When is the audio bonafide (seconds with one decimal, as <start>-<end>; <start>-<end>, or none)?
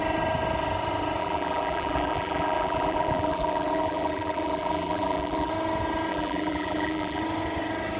0.0-1.2; 5.5-6.1; 7.2-8.0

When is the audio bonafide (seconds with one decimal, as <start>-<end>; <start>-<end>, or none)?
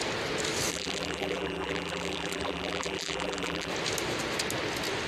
0.0-0.7; 3.7-5.1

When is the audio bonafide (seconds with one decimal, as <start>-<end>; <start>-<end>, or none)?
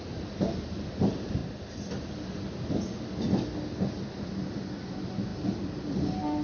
0.0-5.3; 5.8-6.4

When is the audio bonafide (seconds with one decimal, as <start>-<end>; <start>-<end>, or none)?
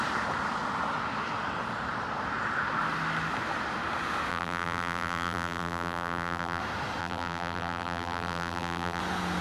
0.0-4.3; 6.6-7.0; 9.0-9.4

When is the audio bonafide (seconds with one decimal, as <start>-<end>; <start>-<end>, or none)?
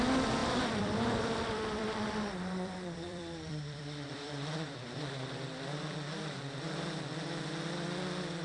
0.0-0.4; 5.1-8.4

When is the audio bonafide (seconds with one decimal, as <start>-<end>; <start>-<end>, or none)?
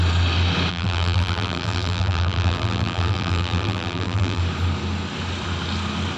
0.0-0.7; 4.4-6.2